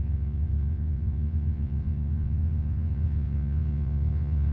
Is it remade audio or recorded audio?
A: remade